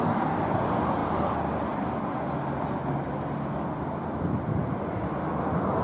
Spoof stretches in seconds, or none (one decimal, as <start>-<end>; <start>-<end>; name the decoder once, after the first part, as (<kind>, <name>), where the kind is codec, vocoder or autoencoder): none